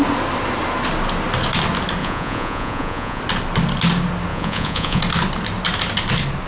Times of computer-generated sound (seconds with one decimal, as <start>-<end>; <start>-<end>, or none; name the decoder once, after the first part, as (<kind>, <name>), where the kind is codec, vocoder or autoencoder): 2.0-3.2 (vocoder, Vocos); 4.3-5.0

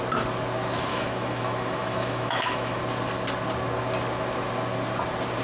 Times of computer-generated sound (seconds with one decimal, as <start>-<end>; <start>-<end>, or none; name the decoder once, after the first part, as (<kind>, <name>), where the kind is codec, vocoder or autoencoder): 0.9-2.8 (autoencoder, DAC-VAE)

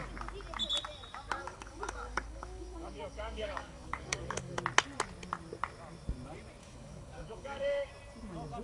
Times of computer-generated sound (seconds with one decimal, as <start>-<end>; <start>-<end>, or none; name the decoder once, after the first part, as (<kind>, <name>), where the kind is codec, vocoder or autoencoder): 1.4-4.6 (codec, DAC); 6.6-7.9